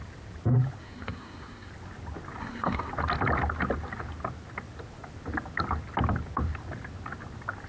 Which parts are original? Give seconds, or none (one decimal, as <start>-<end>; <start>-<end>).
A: 0.0-0.8; 1.7-2.4; 2.9-7.7